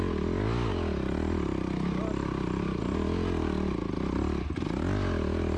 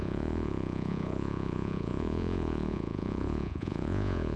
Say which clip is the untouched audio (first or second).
first